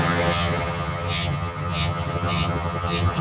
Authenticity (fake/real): fake